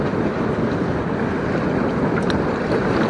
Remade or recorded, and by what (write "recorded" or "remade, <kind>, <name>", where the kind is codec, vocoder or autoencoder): recorded